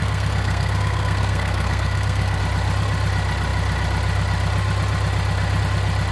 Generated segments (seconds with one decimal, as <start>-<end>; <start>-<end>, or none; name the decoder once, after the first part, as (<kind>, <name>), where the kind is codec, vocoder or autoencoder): 0.0-2.4 (codec, SNAC)